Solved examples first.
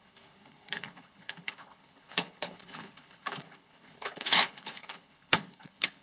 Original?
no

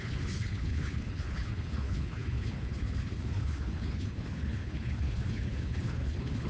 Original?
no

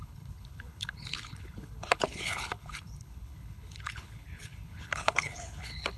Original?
no